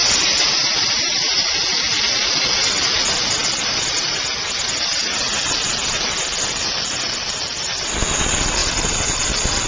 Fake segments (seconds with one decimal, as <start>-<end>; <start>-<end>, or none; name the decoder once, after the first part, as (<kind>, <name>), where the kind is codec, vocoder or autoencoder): 8.6-9.2 (vocoder, BigVGAN v2)

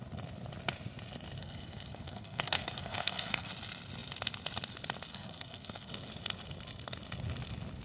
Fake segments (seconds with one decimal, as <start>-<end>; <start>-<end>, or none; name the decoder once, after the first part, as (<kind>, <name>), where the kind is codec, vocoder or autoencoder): 1.4-3.5 (codec, SNAC); 5.1-5.9

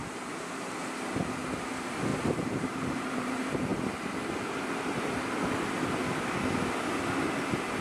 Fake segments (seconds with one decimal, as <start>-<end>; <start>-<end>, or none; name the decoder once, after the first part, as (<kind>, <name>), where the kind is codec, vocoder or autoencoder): 0.0-0.7 (vocoder, BigVGAN v2); 2.1-3.3

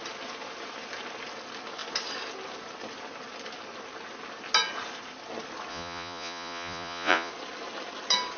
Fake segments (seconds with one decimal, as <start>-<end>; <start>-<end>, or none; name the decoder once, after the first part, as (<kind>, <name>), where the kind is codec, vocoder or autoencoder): 5.7-7.3 (vocoder, Vocos)